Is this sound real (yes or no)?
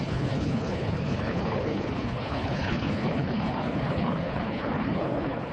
no